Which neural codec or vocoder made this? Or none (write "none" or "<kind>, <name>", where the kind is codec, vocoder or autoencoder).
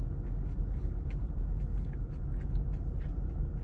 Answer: none